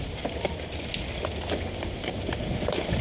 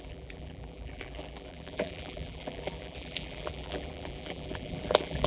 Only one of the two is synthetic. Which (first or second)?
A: second